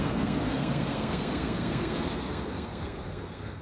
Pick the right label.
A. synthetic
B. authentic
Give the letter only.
A